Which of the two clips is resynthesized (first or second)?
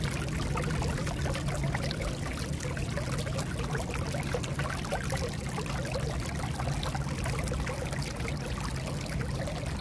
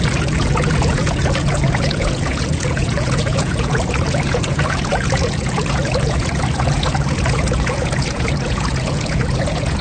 second